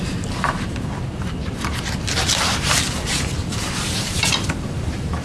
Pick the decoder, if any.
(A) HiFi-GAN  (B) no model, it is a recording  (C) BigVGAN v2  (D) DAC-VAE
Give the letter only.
C